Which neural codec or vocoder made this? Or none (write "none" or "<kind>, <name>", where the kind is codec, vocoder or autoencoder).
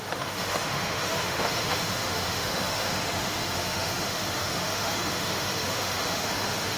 autoencoder, DAC-VAE